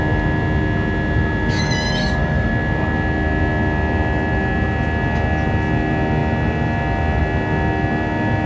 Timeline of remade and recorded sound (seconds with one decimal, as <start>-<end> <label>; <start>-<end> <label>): 0.0-2.0 recorded; 2.0-2.5 remade; 2.5-8.5 recorded